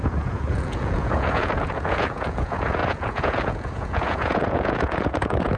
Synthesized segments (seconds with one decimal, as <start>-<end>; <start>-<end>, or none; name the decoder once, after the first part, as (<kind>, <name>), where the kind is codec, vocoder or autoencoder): 0.0-5.6 (vocoder, Vocos)